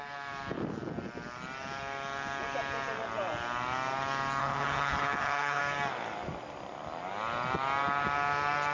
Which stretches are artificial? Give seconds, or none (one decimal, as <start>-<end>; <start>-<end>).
4.4-5.6